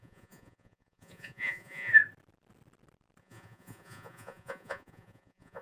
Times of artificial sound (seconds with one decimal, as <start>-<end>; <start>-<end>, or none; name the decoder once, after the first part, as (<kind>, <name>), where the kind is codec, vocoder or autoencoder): 0.0-1.9 (vocoder, Vocos); 3.2-5.6